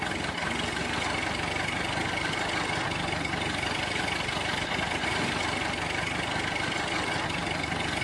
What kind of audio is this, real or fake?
real